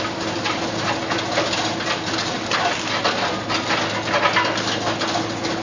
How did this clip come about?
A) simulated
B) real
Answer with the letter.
B